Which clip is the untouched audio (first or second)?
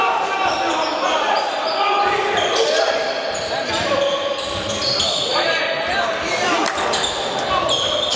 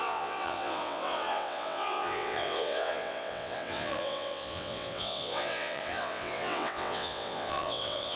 first